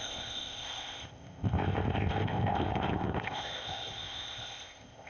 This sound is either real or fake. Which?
fake